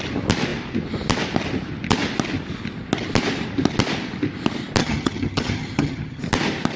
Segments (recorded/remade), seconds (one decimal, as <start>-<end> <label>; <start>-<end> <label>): 0.0-4.8 recorded; 4.8-6.2 remade; 6.2-6.8 recorded